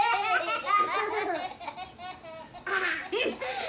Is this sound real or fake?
real